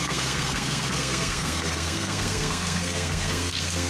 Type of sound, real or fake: fake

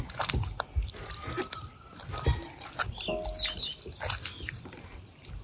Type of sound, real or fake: real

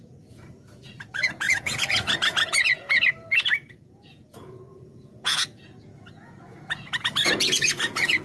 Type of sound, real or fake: fake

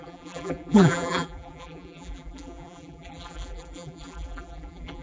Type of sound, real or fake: fake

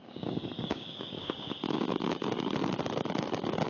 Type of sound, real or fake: fake